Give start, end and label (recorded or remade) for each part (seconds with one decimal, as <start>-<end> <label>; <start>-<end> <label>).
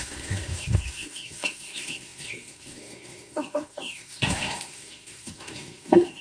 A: 0.0-6.2 remade